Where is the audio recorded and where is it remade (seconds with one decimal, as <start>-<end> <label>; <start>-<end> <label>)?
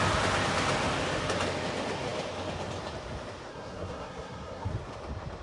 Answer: 0.0-3.5 recorded; 3.5-4.7 remade; 4.7-5.4 recorded